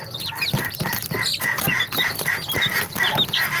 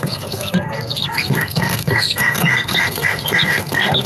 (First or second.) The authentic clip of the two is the first